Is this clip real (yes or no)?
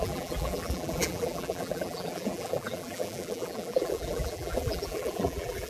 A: no